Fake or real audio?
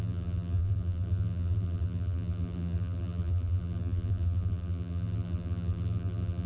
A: fake